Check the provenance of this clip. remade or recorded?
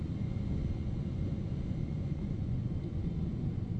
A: remade